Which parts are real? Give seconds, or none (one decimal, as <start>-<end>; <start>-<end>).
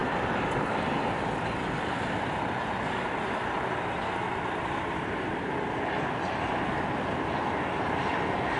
0.0-8.6